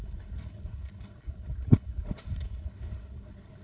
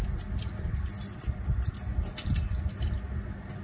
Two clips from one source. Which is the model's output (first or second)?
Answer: first